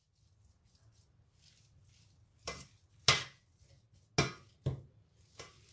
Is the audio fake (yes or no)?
no